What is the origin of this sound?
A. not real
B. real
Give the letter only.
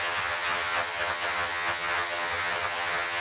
A